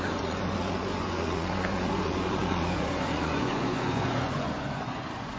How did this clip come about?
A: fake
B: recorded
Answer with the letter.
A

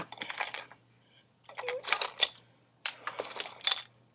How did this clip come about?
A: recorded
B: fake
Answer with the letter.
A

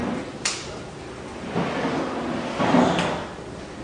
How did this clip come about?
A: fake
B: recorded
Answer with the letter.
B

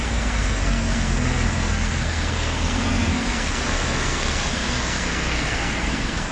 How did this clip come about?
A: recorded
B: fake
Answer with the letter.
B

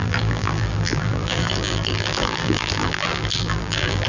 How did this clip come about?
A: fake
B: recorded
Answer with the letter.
A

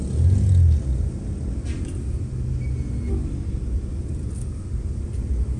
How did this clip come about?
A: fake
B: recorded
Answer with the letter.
B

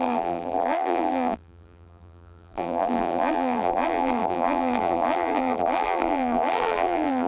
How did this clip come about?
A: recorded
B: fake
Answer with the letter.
B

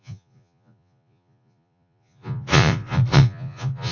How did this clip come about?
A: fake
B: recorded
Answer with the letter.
A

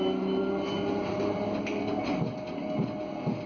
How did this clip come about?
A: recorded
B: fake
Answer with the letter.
A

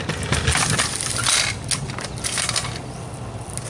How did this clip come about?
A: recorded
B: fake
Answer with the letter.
A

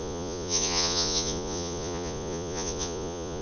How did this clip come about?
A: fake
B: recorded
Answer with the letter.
A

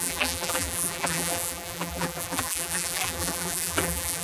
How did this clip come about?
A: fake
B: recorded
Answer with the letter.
A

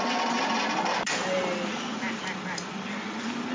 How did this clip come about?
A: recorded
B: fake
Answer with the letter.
A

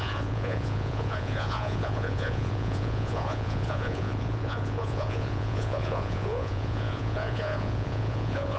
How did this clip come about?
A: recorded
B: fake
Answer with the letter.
B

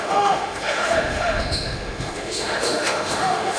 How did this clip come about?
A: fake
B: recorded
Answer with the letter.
A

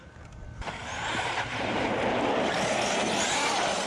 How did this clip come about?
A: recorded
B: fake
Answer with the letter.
A